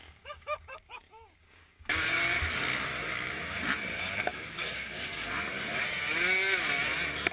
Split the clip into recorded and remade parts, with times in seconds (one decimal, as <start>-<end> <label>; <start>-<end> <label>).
0.0-2.2 remade; 2.2-4.3 recorded; 4.3-5.3 remade; 5.3-7.3 recorded